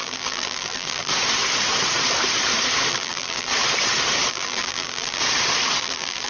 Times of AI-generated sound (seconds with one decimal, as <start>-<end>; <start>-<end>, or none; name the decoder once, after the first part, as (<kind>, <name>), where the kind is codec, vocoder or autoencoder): 0.0-1.1 (vocoder, BigVGAN v2); 2.9-3.5; 4.3-5.2; 5.8-6.3